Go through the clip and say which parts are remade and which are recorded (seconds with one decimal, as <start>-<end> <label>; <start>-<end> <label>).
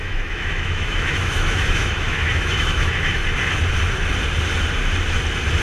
0.0-3.2 remade; 3.2-5.6 recorded